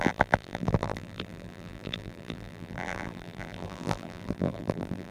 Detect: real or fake fake